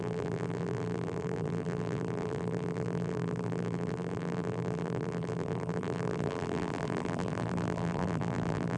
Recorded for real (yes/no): no